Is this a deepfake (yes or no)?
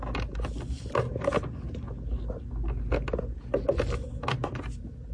no